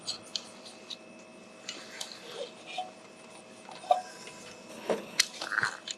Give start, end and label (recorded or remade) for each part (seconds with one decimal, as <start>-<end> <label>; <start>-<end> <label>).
0.0-4.7 recorded; 4.7-5.2 remade; 5.2-6.0 recorded